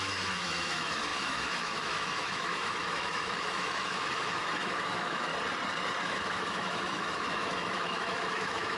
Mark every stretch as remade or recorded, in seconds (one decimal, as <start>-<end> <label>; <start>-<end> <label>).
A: 0.0-5.3 remade; 5.3-6.0 recorded; 6.0-8.8 remade